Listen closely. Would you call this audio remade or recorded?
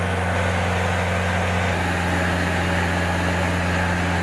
recorded